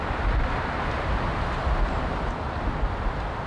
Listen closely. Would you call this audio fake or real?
real